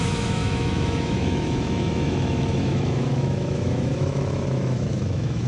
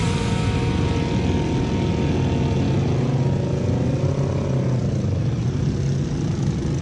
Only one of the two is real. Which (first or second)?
second